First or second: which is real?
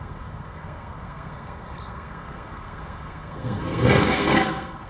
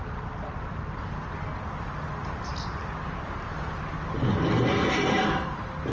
second